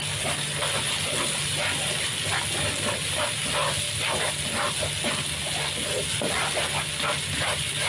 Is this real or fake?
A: real